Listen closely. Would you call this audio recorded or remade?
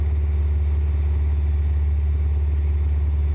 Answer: recorded